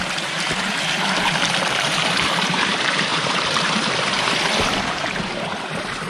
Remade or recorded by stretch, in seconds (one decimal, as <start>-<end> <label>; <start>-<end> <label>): 0.0-6.1 remade